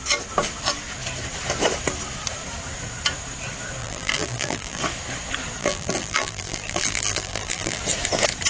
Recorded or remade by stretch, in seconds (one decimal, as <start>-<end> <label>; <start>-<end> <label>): 0.0-3.8 recorded; 3.8-4.8 remade; 4.8-5.6 recorded; 5.6-7.8 remade; 7.8-8.5 recorded